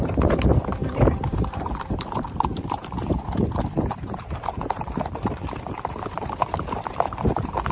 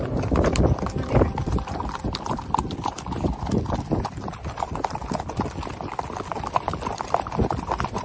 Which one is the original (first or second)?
second